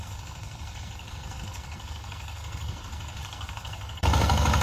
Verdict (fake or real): fake